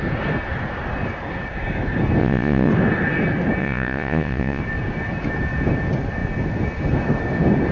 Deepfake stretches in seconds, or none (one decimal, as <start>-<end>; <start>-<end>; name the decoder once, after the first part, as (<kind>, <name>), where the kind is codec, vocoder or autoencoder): 2.2-2.7 (vocoder, Vocos); 3.6-4.6